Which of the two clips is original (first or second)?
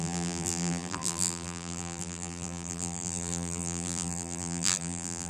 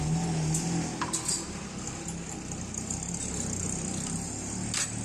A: second